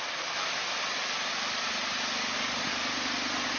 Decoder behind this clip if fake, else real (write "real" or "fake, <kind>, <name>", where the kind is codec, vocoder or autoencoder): real